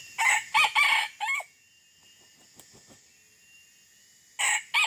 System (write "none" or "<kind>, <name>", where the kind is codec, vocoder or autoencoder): none